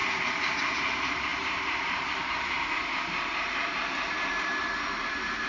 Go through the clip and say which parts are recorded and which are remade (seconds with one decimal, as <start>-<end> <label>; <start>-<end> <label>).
0.0-0.8 recorded; 0.8-5.5 remade